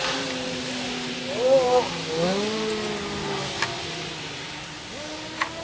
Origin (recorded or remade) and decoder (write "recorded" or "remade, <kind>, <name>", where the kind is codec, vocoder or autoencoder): recorded